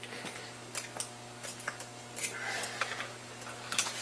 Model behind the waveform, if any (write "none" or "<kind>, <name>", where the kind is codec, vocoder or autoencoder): none